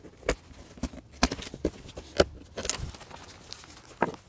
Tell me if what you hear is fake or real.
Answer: real